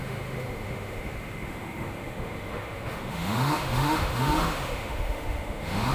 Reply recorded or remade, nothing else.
remade